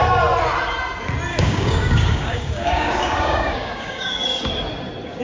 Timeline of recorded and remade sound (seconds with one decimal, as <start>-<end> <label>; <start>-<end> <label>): 0.0-1.3 recorded; 1.3-4.1 remade; 4.1-5.2 recorded